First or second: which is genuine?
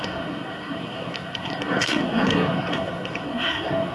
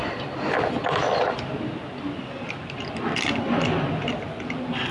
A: second